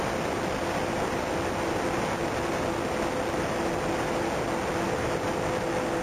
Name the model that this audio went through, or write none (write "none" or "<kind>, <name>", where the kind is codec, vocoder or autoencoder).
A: none